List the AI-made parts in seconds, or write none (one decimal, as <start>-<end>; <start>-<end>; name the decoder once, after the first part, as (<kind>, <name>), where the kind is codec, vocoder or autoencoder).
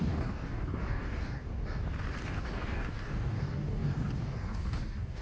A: 0.0-1.5 (codec, DAC); 2.2-5.2